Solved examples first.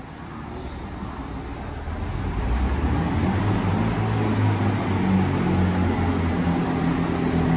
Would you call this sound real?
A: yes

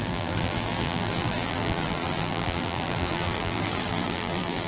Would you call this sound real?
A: no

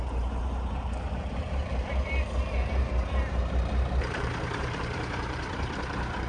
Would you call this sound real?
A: no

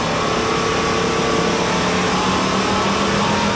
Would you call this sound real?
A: yes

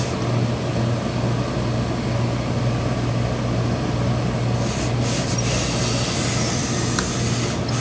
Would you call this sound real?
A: yes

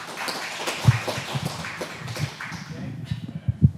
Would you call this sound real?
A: yes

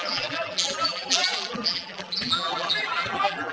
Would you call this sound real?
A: no